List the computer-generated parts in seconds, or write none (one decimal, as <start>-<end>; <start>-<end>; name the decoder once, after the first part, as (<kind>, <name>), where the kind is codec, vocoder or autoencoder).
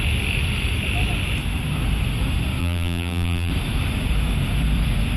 2.6-3.5 (vocoder, BigVGAN v2)